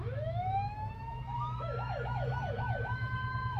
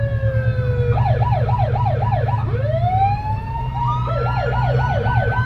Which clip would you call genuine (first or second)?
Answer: second